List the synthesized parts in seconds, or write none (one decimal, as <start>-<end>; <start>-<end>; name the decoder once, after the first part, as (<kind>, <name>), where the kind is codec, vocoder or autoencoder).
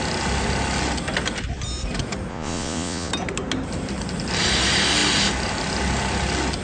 2.3-3.1 (vocoder, Vocos)